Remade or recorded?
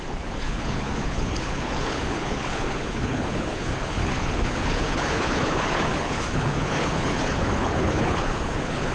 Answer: remade